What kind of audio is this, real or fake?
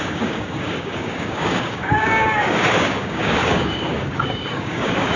fake